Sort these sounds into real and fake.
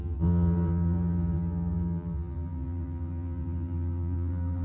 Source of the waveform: fake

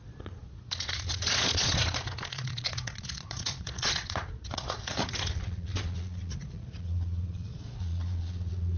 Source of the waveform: fake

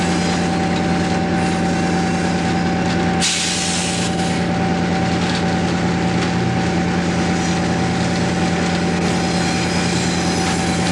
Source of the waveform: real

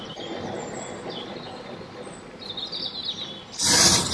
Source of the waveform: real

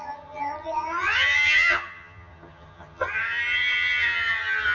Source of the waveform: fake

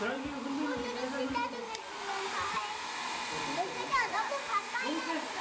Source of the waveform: real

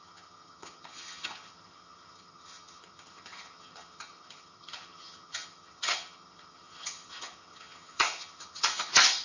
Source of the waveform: fake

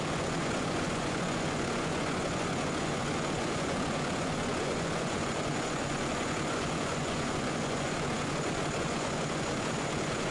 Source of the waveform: fake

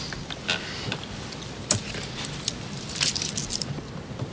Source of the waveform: fake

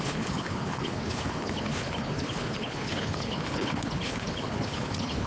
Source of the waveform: fake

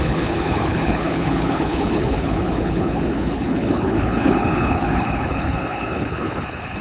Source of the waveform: fake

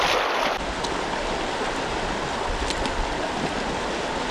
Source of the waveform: real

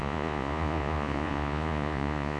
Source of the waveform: fake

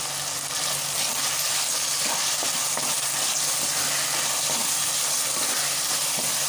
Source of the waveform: real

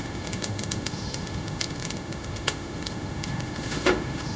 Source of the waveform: fake